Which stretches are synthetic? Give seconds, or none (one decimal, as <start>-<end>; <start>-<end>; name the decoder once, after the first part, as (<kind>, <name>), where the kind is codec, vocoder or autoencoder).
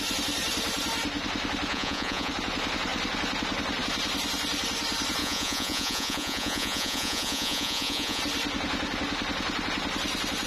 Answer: 1.7-2.3 (vocoder, Vocos); 5.2-8.2